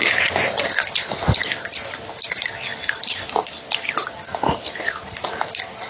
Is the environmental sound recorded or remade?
recorded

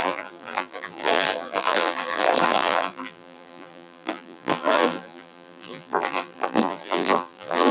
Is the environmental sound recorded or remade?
remade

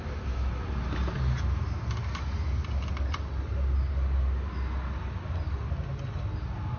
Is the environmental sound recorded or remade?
recorded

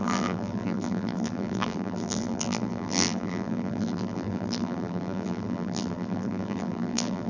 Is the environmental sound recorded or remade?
remade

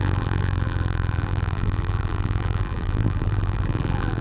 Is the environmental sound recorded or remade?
remade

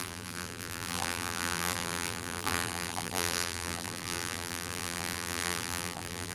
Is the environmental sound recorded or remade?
remade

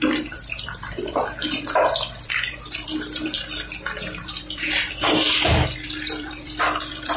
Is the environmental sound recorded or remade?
remade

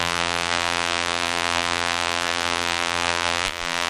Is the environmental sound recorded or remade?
remade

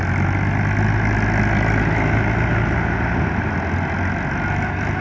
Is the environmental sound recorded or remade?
recorded